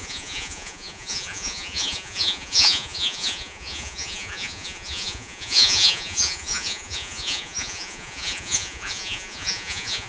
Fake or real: fake